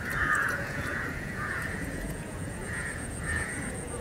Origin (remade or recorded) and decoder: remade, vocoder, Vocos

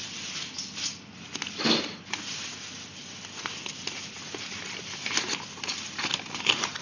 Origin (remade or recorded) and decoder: recorded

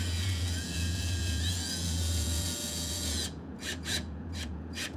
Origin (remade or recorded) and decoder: remade, vocoder, Vocos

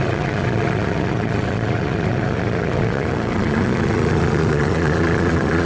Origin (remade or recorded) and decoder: remade, vocoder, Vocos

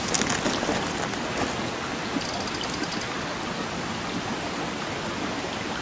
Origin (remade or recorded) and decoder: recorded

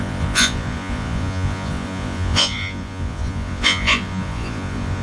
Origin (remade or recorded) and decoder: remade, vocoder, Vocos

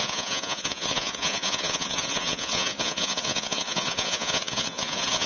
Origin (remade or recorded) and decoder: remade, vocoder, Vocos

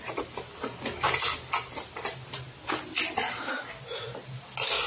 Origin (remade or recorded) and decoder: recorded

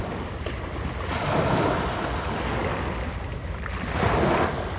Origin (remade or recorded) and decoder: recorded